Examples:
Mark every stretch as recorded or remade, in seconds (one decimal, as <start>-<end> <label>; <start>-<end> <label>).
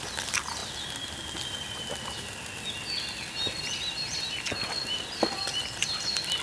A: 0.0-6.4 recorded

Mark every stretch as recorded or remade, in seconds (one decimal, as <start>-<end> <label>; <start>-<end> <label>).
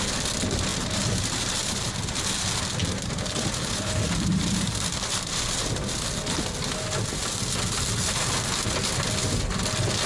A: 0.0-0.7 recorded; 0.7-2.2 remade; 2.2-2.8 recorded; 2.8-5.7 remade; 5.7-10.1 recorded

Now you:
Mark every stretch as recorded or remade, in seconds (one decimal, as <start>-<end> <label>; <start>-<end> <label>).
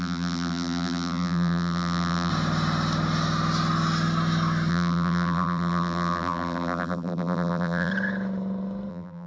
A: 0.0-2.3 remade; 2.3-4.7 recorded; 4.7-7.9 remade; 7.9-8.9 recorded; 8.9-9.3 remade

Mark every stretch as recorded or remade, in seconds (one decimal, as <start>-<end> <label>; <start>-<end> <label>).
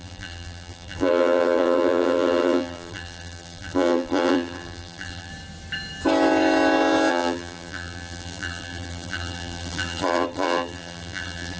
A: 0.0-5.3 remade; 5.3-7.1 recorded; 7.1-11.6 remade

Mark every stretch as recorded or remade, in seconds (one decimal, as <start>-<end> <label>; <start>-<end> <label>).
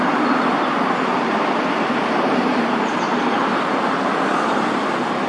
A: 0.0-1.1 recorded; 1.1-4.3 remade; 4.3-5.3 recorded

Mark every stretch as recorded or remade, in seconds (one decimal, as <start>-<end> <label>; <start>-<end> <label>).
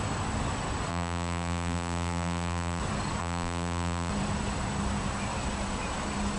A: 0.0-0.9 recorded; 0.9-2.8 remade; 2.8-3.2 recorded; 3.2-4.1 remade; 4.1-6.4 recorded